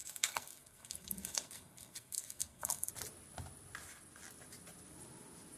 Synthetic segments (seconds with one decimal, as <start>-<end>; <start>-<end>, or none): 0.0-2.9

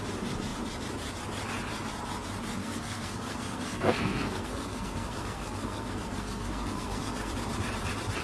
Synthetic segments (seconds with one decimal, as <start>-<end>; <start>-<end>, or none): 2.6-7.3

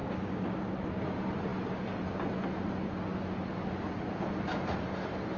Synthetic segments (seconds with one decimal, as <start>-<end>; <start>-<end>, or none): 0.0-0.6